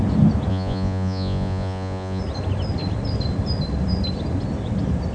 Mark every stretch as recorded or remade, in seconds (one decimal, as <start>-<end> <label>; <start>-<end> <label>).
0.0-0.5 recorded; 0.5-2.2 remade; 2.2-5.1 recorded